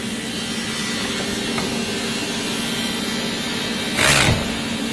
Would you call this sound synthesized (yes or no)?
no